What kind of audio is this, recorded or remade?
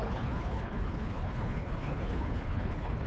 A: remade